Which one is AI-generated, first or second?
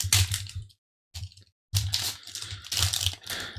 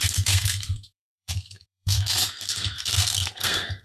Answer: second